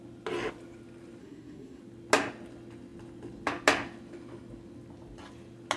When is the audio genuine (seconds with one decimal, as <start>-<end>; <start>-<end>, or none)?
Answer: 0.0-1.2; 1.8-5.8